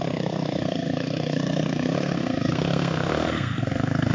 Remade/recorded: remade